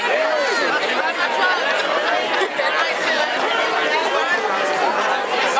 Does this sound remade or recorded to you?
recorded